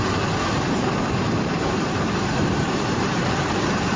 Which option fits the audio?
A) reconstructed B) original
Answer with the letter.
A